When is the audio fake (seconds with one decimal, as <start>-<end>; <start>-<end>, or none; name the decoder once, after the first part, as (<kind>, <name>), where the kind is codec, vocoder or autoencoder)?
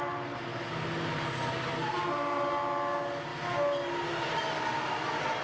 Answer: none